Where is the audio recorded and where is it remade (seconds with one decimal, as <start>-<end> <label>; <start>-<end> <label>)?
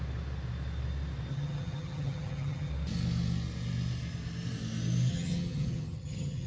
0.0-1.3 recorded; 1.3-2.7 remade; 2.7-5.1 recorded; 5.1-6.5 remade